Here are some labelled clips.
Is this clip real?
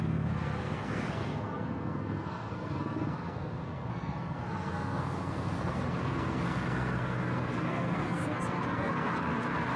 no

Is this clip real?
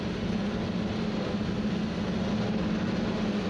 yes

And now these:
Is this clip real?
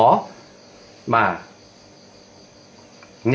yes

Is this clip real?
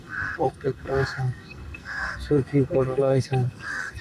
no